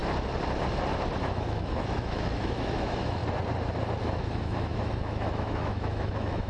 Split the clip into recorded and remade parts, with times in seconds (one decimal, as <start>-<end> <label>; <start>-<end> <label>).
0.0-1.2 recorded; 1.2-3.2 remade; 3.2-4.0 recorded; 4.0-6.5 remade

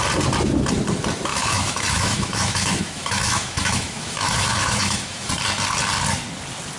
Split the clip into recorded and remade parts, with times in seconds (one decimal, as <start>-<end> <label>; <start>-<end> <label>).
0.0-1.3 recorded; 1.3-5.3 remade; 5.3-6.8 recorded

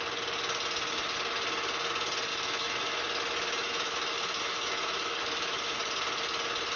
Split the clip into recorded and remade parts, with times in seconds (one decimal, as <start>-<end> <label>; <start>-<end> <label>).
0.0-2.3 recorded; 2.3-3.0 remade; 3.0-3.6 recorded; 3.6-5.8 remade; 5.8-6.8 recorded

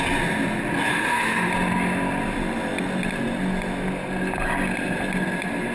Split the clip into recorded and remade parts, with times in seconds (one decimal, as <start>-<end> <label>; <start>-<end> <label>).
0.0-0.9 recorded; 0.9-1.5 remade; 1.5-5.7 recorded

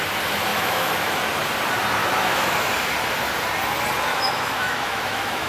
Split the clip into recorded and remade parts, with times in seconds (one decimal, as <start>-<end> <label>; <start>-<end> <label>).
0.0-0.5 recorded; 0.5-1.2 remade; 1.2-2.0 recorded; 2.0-2.7 remade; 2.7-4.1 recorded; 4.1-5.5 remade

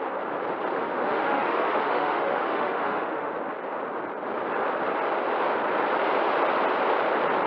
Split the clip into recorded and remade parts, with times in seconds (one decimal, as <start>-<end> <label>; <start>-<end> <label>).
0.0-0.8 recorded; 0.8-3.3 remade; 3.3-7.5 recorded